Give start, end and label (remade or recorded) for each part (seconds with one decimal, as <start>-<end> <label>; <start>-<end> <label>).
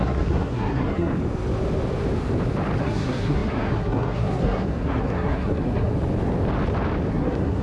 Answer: 0.0-1.1 remade; 1.1-2.8 recorded; 2.8-5.9 remade; 5.9-7.1 recorded; 7.1-7.6 remade